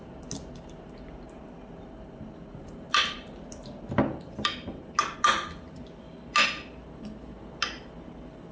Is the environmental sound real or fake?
real